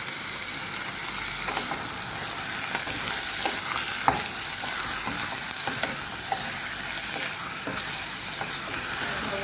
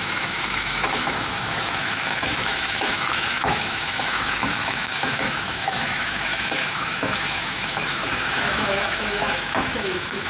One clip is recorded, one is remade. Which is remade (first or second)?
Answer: second